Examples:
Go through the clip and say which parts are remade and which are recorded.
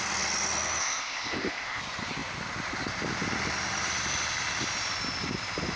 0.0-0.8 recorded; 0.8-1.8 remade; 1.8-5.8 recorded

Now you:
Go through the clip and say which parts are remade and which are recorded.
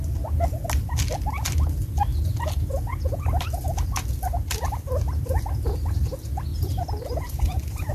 0.0-6.5 recorded; 6.5-7.9 remade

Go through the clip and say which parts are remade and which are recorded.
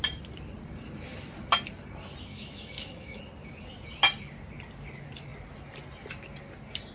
0.0-2.3 recorded; 2.3-3.2 remade; 3.2-6.9 recorded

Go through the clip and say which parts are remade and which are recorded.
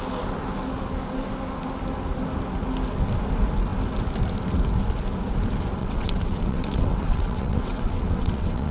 0.0-5.8 recorded; 5.8-8.7 remade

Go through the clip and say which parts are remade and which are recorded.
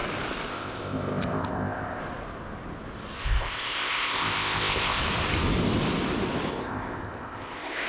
0.0-0.5 recorded; 0.5-2.0 remade; 2.0-3.2 recorded; 3.2-5.0 remade; 5.0-6.5 recorded; 6.5-7.9 remade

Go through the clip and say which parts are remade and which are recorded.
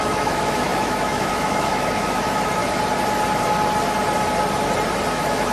0.0-2.6 remade; 2.6-5.1 recorded; 5.1-5.5 remade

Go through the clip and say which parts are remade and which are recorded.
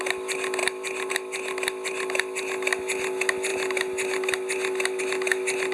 0.0-0.6 recorded; 0.6-1.1 remade; 1.1-5.7 recorded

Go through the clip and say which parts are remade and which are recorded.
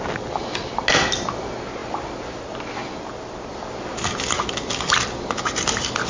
0.0-6.1 recorded